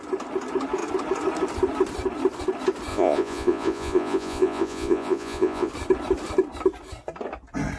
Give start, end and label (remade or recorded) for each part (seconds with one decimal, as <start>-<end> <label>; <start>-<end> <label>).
0.0-2.9 recorded; 2.9-5.7 remade; 5.7-7.8 recorded